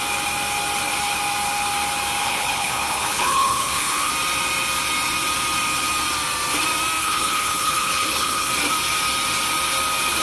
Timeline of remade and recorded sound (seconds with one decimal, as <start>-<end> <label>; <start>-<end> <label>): 0.0-2.2 recorded; 2.2-4.1 remade; 4.1-7.0 recorded; 7.0-8.5 remade; 8.5-10.2 recorded